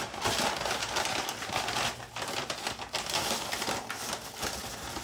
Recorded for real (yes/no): yes